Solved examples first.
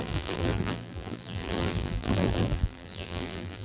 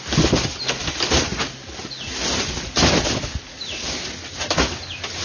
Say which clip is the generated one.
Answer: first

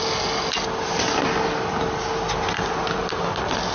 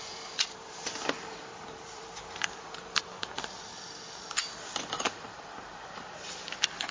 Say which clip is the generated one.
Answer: second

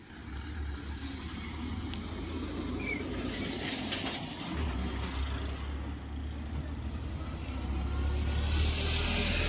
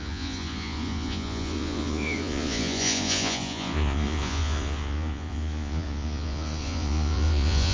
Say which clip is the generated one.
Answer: second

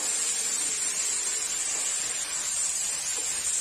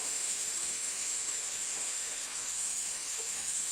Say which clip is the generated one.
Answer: second